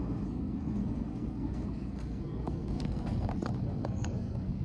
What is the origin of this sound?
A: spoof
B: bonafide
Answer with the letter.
A